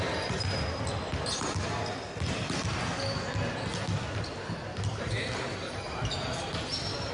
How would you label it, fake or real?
real